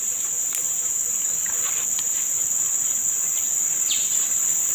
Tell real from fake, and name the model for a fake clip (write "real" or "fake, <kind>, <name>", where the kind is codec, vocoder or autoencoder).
real